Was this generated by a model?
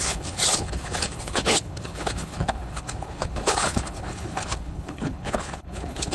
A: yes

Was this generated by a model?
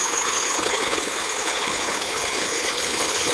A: yes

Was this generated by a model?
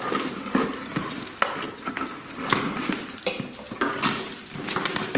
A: no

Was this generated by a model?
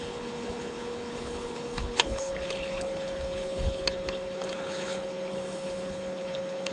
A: yes